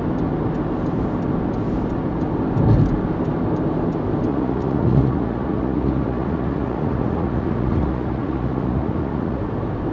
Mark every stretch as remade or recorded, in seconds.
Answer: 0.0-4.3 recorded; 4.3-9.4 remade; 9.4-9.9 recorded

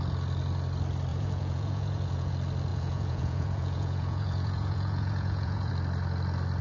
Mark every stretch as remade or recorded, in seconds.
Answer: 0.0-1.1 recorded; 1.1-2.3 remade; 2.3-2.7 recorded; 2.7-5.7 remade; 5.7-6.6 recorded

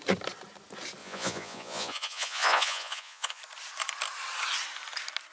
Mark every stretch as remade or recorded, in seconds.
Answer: 0.0-1.0 recorded; 1.0-3.4 remade; 3.4-5.3 recorded

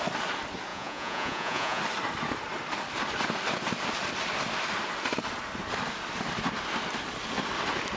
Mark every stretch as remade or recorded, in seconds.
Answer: 0.0-0.7 recorded; 0.7-1.8 remade; 1.8-8.0 recorded

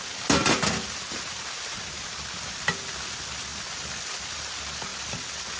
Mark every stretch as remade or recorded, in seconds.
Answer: 0.0-5.6 recorded

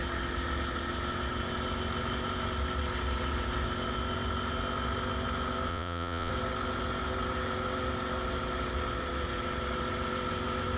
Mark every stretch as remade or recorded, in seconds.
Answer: 0.0-5.7 recorded; 5.7-6.3 remade; 6.3-10.8 recorded

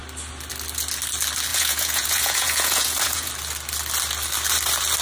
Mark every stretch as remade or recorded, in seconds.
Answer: 0.0-1.5 recorded; 1.5-3.3 remade; 3.3-5.0 recorded

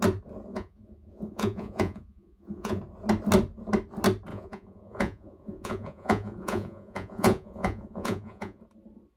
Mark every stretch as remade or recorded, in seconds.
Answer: 0.0-0.5 recorded; 0.5-2.8 remade; 2.8-4.3 recorded; 4.3-8.6 remade; 8.6-9.2 recorded